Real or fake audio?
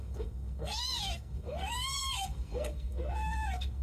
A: fake